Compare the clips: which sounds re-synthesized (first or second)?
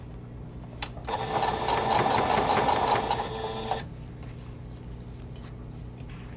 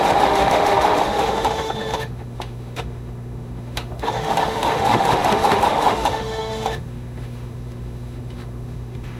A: second